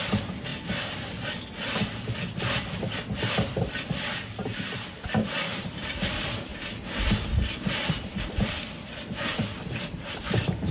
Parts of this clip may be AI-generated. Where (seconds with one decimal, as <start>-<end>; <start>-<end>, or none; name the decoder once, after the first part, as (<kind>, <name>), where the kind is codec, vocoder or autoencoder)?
0.0-0.5 (vocoder, BigVGAN v2); 2.4-6.5; 7.9-10.7